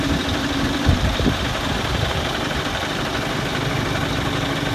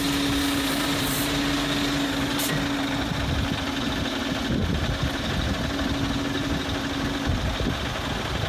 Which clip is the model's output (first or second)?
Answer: first